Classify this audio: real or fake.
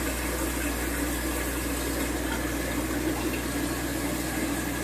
real